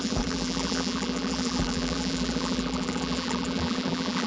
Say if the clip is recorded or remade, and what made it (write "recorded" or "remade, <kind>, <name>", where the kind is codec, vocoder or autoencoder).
remade, vocoder, BigVGAN v2